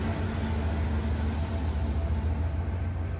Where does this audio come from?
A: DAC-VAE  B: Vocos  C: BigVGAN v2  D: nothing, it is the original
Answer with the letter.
D